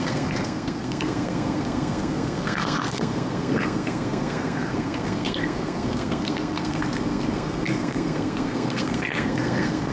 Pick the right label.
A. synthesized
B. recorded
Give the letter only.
A